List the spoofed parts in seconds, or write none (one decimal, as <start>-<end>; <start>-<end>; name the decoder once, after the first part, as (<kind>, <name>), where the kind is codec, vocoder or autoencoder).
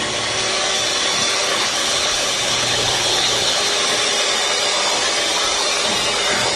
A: 1.5-3.6 (codec, HILCodec)